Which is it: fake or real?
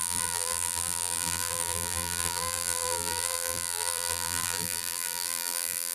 fake